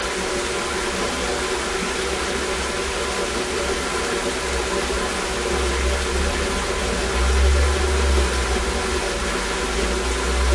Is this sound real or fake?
real